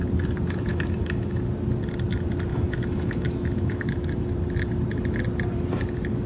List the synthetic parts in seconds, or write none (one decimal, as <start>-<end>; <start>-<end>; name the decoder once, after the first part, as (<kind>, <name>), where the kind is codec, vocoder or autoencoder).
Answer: 0.7-1.4 (autoencoder, DAC-VAE); 2.5-4.3